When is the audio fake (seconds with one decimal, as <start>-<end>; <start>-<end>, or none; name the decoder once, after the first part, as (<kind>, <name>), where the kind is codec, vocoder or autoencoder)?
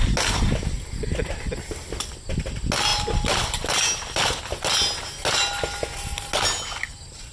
none